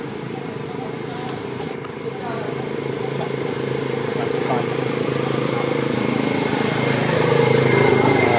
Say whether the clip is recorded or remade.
remade